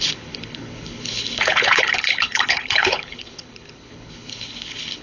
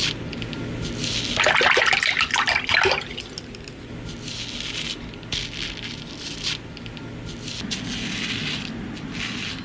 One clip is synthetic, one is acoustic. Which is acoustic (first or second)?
second